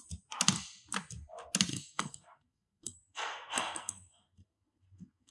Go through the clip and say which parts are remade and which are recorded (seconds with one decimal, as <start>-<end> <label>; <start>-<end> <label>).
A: 0.0-1.7 recorded; 1.7-5.3 remade